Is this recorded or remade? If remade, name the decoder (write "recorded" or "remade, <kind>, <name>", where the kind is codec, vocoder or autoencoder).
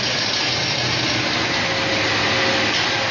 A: recorded